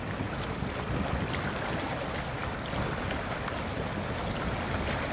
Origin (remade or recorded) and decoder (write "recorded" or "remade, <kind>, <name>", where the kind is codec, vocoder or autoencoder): recorded